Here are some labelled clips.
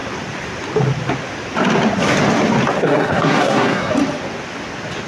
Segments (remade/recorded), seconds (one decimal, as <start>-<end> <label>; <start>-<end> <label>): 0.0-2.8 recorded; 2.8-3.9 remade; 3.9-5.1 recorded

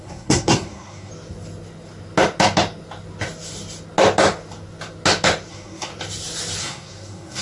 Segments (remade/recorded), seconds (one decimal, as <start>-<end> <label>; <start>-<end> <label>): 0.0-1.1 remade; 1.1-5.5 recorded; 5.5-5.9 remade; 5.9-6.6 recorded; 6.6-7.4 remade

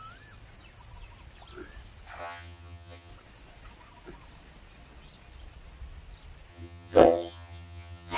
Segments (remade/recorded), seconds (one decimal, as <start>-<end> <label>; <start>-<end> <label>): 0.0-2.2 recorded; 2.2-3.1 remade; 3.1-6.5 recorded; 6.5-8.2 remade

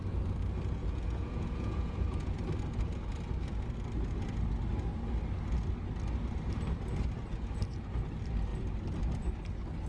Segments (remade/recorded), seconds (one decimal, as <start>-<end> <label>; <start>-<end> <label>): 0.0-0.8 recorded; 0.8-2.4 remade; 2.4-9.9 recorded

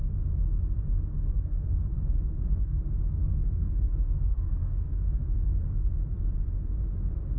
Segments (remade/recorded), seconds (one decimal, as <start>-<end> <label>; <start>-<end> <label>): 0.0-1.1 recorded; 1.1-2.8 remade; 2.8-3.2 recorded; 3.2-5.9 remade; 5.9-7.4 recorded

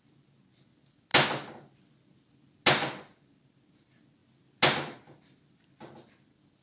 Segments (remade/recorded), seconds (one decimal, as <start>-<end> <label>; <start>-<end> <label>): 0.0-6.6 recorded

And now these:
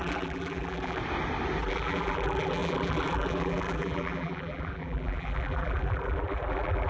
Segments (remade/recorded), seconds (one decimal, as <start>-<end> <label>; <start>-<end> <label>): 0.0-1.0 remade; 1.0-1.6 recorded; 1.6-6.9 remade

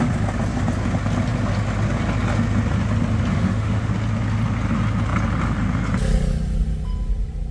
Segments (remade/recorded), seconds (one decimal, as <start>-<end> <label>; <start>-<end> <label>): 0.0-3.3 recorded; 3.3-3.9 remade; 3.9-7.5 recorded